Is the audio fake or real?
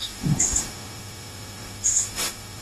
fake